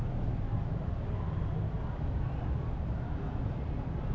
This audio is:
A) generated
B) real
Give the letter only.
B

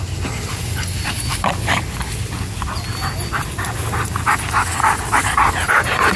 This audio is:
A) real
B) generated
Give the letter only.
A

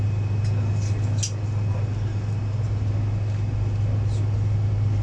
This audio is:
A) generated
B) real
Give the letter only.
B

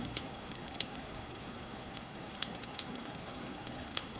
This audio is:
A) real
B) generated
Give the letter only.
B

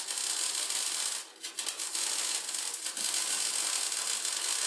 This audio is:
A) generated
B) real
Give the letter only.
B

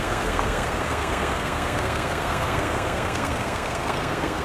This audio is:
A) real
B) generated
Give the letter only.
B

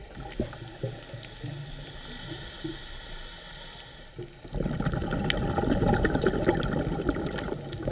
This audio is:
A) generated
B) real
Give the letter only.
B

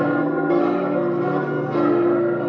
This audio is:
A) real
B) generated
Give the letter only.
B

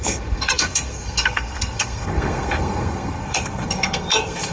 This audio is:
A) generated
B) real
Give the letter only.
A